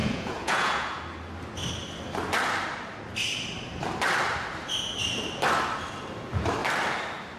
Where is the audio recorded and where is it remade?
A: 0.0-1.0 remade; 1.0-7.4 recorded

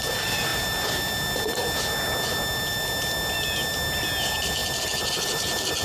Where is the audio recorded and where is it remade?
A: 0.0-5.8 recorded

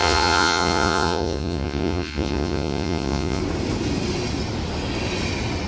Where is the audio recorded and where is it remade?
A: 0.0-3.4 remade; 3.4-5.7 recorded

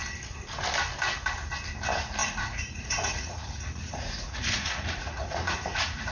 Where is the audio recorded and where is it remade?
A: 0.0-2.2 recorded; 2.2-6.1 remade

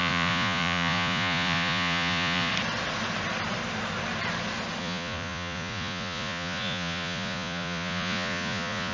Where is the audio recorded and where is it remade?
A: 0.0-2.5 remade; 2.5-4.8 recorded; 4.8-8.9 remade

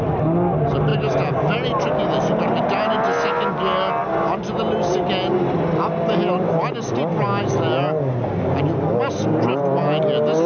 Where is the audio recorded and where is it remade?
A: 0.0-10.5 recorded